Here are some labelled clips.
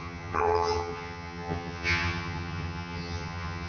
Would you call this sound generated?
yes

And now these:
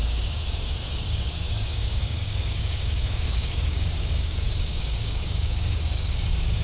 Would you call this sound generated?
yes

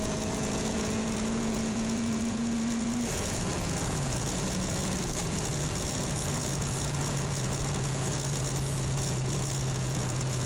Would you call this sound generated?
yes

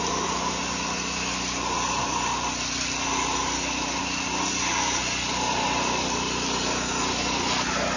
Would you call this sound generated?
no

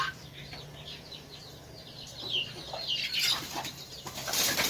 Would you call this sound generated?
no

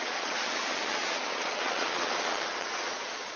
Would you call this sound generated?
yes